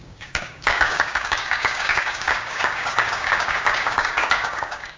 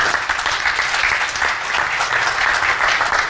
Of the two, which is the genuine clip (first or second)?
second